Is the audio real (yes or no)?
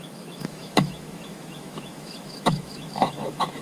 no